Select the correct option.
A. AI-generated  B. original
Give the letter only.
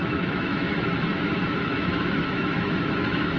A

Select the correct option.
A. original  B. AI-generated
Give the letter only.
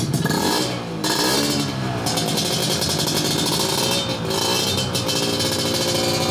A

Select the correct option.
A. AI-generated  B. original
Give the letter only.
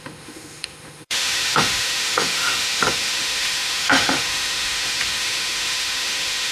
A